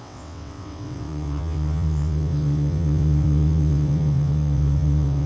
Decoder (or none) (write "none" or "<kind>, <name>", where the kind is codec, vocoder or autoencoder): vocoder, WaveNeXt